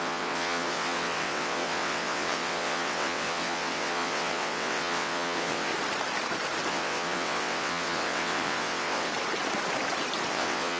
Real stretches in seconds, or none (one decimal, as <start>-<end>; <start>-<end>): 5.7-6.7; 9.1-10.3